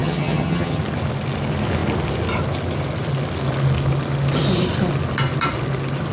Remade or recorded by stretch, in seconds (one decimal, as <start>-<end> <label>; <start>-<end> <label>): 0.0-0.8 remade; 0.8-6.1 recorded